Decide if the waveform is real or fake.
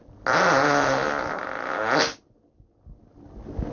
real